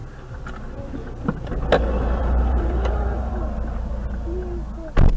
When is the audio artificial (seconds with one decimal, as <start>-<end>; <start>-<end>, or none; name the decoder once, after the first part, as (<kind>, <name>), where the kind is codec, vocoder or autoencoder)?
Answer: 2.2-3.4 (vocoder, BigVGAN v2)